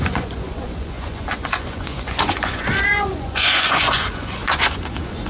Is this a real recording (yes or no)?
no